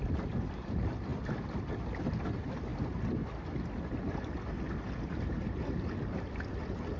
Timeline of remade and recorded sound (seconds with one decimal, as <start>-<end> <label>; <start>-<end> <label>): 0.0-7.0 recorded